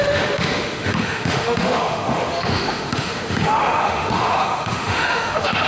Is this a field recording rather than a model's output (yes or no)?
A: no